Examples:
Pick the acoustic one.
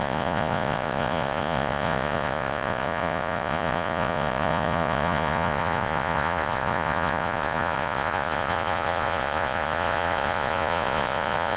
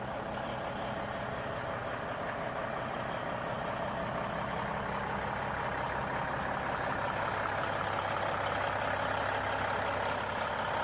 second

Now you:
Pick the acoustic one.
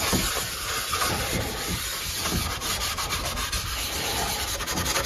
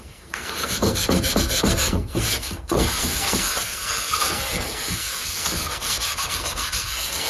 first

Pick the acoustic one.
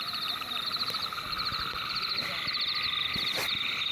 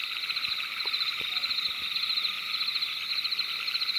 second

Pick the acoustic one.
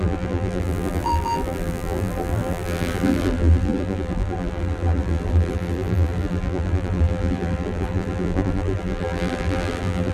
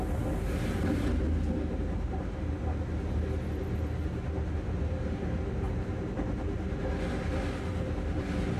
second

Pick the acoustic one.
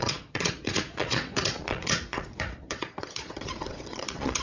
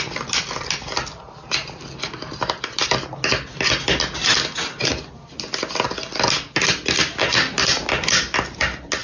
second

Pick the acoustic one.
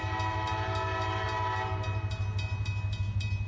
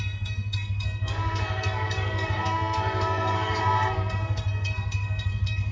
first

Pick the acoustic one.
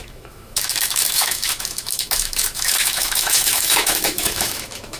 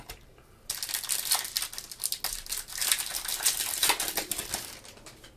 second